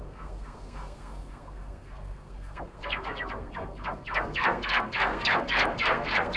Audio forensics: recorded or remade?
remade